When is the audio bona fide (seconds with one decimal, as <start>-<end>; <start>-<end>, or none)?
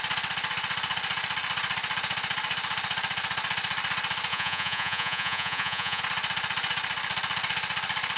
0.0-4.3; 6.0-8.2